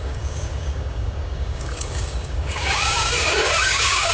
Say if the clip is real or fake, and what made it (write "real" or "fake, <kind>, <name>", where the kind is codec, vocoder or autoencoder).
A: fake, codec, DAC